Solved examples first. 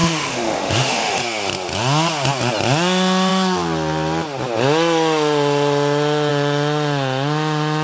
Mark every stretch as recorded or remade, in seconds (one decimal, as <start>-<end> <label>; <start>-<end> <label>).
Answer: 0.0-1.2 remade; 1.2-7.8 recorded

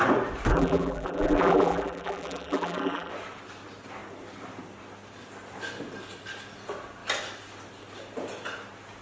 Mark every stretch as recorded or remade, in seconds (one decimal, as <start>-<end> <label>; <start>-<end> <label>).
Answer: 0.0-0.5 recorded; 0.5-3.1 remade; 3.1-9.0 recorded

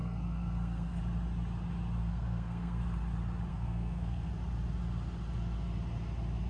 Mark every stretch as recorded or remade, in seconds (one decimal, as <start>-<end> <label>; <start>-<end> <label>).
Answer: 0.0-1.0 remade; 1.0-2.0 recorded; 2.0-2.8 remade; 2.8-3.5 recorded; 3.5-4.3 remade; 4.3-6.5 recorded

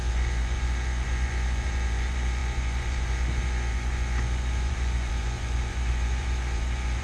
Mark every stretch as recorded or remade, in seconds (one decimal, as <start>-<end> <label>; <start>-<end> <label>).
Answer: 0.0-7.0 remade

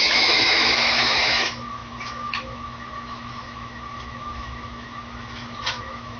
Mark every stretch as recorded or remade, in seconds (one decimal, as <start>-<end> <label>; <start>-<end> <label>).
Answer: 0.0-6.2 remade

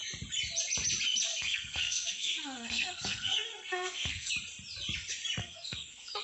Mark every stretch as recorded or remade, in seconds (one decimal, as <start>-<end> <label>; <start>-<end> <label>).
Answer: 0.0-1.3 recorded; 1.3-4.3 remade; 4.3-5.4 recorded; 5.4-6.2 remade